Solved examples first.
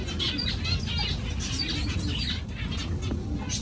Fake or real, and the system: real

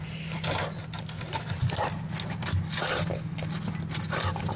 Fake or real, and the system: real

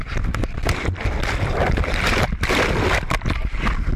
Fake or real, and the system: real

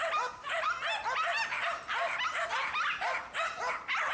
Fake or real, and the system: real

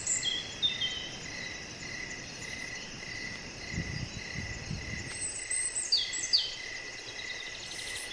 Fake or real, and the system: real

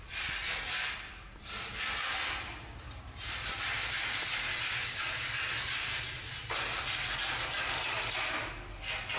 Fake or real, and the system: real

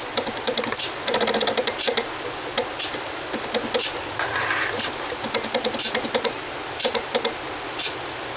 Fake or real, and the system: real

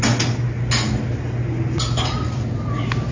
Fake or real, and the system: real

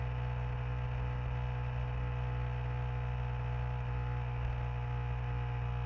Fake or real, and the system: real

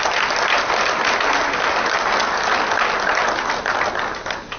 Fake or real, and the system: real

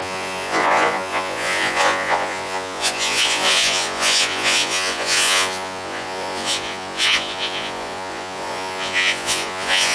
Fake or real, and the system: fake, vocoder, Vocos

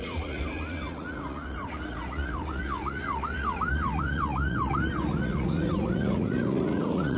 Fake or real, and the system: fake, vocoder, Vocos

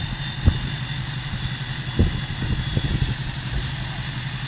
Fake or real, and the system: real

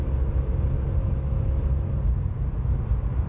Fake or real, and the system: real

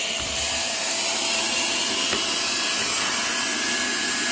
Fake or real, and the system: real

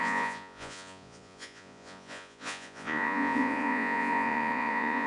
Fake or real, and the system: fake, vocoder, Vocos